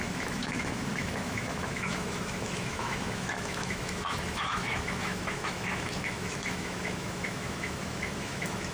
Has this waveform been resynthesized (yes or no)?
yes